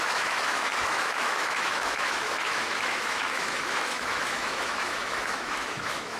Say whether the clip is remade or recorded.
remade